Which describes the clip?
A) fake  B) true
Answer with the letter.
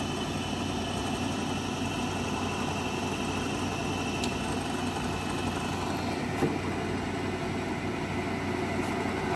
B